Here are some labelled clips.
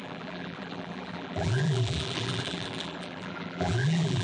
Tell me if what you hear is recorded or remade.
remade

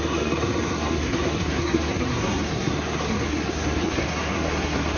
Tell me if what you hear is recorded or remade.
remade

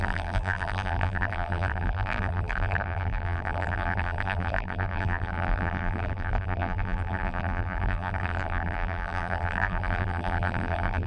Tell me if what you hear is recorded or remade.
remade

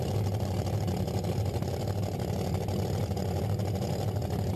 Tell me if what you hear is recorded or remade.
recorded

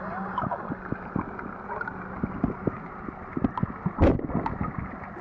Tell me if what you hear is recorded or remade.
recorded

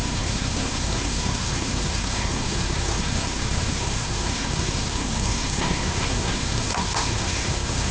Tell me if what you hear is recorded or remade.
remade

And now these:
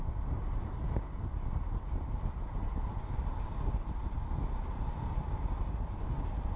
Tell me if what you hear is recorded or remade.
recorded